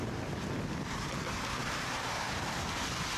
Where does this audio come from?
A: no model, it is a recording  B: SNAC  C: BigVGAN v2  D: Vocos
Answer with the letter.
A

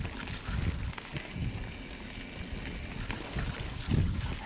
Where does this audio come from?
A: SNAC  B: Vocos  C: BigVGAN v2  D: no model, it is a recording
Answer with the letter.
D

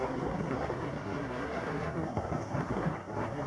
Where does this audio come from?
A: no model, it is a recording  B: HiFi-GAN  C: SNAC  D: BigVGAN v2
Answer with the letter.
C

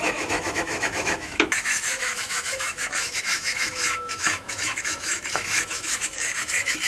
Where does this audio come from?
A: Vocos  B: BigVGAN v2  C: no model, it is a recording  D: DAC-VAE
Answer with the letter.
D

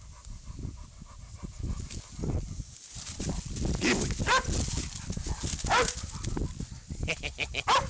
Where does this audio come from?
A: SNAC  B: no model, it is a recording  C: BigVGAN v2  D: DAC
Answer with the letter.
B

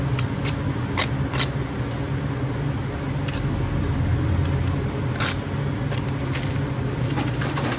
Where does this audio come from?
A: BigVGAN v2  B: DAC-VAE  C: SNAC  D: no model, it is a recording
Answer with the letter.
D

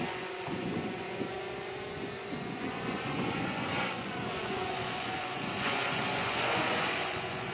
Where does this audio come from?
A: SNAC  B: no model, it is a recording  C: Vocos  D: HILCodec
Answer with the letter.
C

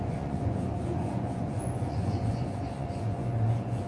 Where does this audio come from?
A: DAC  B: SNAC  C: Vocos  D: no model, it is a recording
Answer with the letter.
C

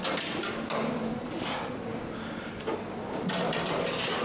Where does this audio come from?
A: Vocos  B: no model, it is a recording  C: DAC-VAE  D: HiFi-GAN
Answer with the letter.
B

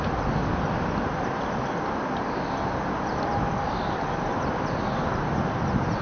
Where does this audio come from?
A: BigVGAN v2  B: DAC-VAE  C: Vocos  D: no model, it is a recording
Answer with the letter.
D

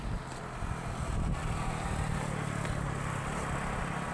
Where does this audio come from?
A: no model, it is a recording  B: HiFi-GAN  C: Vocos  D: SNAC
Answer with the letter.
A